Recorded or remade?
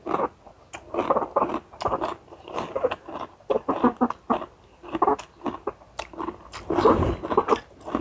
recorded